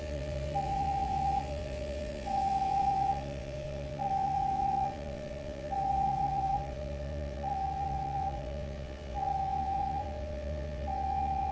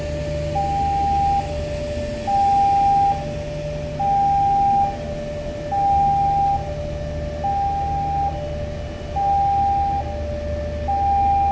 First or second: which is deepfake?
first